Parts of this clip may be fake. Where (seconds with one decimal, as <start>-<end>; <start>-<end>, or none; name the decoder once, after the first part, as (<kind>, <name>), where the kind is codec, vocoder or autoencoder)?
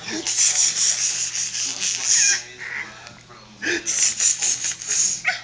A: 1.7-2.3 (vocoder, BigVGAN v2)